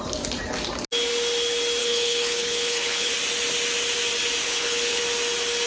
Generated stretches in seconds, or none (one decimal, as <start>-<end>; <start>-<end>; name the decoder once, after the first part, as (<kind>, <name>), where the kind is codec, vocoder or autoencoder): 1.8-3.1 (codec, HILCodec); 4.4-5.0